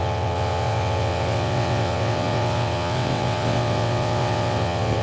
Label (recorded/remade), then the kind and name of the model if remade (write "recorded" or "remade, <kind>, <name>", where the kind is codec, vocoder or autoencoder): remade, vocoder, WaveNeXt